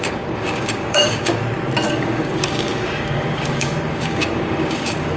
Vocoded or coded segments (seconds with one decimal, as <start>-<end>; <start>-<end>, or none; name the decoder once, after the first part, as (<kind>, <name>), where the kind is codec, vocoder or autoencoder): 0.0-1.4 (codec, DAC); 1.9-5.2